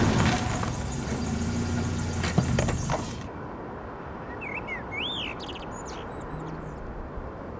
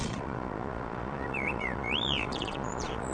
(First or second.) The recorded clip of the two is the first